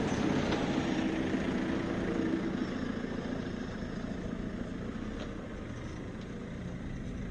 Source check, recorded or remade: recorded